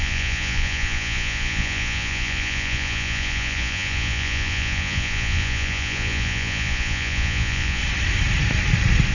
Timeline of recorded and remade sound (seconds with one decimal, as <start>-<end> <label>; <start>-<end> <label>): 0.0-7.8 remade; 7.8-9.1 recorded